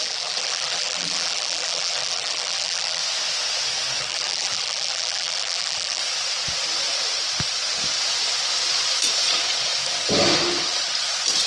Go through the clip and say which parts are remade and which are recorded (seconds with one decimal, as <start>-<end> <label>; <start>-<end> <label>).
0.0-3.0 remade; 3.0-4.0 recorded; 4.0-6.0 remade; 6.0-11.5 recorded